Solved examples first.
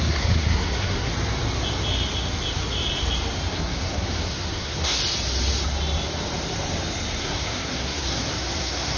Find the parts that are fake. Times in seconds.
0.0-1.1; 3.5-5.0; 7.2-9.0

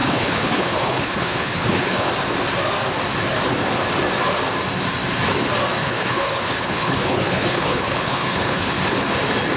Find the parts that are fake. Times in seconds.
0.0-2.1; 5.8-8.7